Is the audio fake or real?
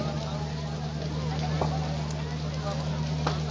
real